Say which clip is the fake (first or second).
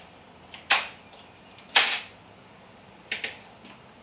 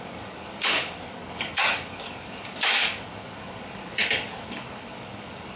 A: second